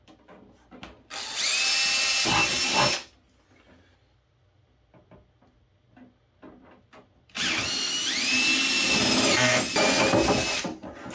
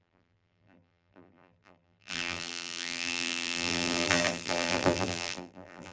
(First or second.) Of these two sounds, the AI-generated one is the second